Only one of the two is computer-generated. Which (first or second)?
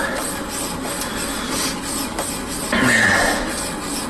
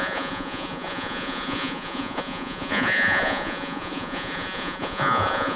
second